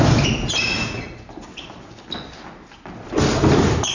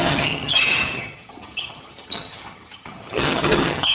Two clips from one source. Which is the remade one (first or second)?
second